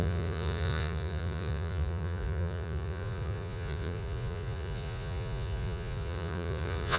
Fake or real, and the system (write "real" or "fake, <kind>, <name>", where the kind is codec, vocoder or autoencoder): fake, vocoder, Vocos